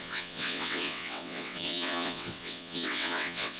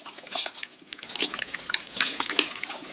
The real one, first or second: second